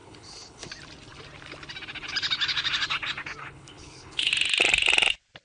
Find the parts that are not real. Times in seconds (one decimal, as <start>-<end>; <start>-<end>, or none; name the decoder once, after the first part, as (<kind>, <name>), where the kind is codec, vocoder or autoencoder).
0.0-0.7 (codec, HILCodec); 3.4-4.3